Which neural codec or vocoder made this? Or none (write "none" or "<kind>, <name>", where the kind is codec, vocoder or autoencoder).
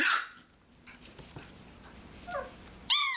none